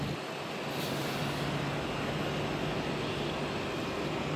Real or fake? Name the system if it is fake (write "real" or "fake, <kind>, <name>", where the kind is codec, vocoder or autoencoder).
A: real